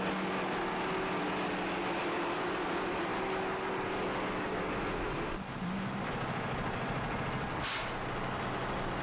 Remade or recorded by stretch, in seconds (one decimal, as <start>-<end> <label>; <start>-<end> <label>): 0.0-9.0 recorded

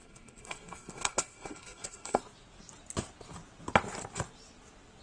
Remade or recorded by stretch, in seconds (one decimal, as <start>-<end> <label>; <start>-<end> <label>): 0.0-2.2 remade; 2.2-5.0 recorded

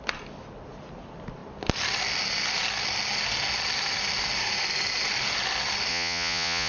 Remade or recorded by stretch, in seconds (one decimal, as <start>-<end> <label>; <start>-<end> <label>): 0.0-5.9 recorded; 5.9-6.7 remade

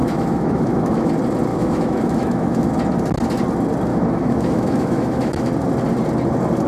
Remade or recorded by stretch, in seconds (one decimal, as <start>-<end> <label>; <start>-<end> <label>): 0.0-1.1 remade; 1.1-1.5 recorded; 1.5-2.7 remade; 2.7-3.9 recorded; 3.9-5.5 remade; 5.5-6.7 recorded

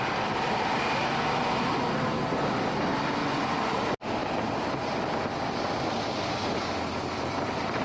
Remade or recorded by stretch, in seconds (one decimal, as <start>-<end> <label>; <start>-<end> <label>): 0.0-3.2 recorded; 3.2-3.8 remade; 3.8-7.8 recorded